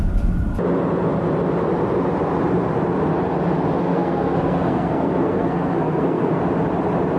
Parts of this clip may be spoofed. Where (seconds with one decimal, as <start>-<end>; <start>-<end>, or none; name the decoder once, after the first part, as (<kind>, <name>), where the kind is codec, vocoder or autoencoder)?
3.8-6.4 (codec, SNAC)